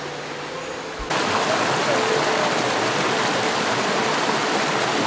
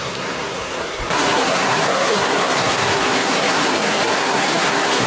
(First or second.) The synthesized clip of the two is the second